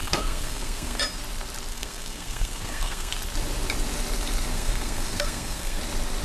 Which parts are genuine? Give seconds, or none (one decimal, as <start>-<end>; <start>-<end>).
1.0-1.7; 3.1-4.5; 5.8-6.2